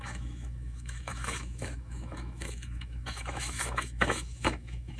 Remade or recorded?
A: remade